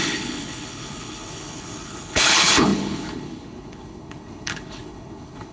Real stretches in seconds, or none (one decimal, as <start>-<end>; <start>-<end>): none